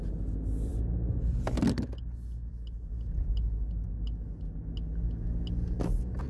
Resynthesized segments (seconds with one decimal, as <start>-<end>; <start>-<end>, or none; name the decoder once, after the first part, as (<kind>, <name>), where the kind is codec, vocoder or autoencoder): none